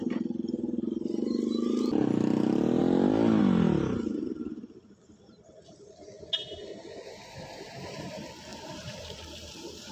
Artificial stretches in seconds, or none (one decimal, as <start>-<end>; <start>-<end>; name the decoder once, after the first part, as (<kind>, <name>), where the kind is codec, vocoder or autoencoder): 8.5-9.9 (vocoder, BigVGAN v2)